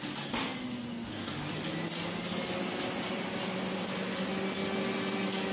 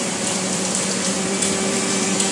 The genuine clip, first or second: first